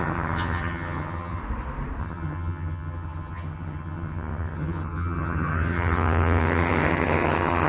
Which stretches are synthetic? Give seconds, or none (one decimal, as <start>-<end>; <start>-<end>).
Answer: 0.0-1.4; 2.0-7.7